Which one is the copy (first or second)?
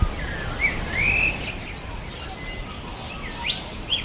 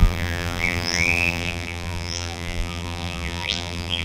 second